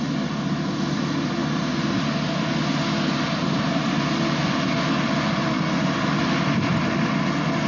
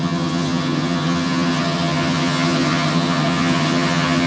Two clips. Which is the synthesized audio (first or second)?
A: second